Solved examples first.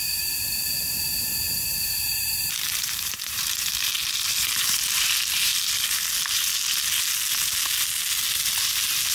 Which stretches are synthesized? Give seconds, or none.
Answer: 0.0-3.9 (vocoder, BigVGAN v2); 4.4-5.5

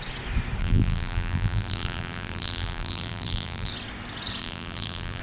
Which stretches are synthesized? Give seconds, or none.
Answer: 0.6-3.7 (vocoder, BigVGAN v2); 4.4-5.2

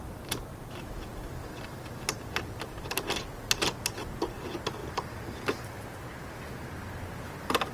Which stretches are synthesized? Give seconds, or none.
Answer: none

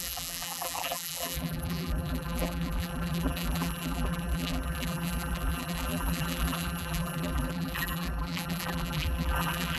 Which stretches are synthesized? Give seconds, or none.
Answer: 0.0-9.8 (vocoder, BigVGAN v2)

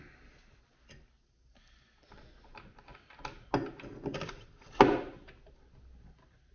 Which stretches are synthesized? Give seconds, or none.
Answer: none

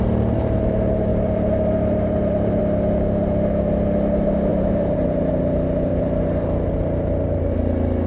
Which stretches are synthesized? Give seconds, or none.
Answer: 1.1-2.6 (vocoder, BigVGAN v2); 4.5-5.3